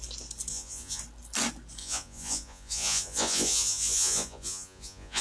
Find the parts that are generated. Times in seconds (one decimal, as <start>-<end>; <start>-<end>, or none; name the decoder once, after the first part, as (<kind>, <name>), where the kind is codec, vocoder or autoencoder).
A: 0.5-1.0 (vocoder, Vocos); 1.8-5.2